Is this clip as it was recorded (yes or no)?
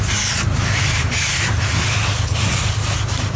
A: yes